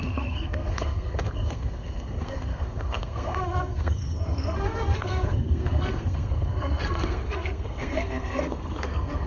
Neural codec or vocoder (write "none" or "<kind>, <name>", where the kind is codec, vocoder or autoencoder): codec, SNAC